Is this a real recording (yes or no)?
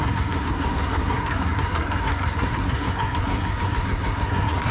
no